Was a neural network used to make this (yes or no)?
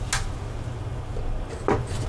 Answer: no